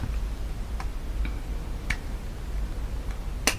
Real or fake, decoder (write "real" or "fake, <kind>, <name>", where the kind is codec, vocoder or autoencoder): real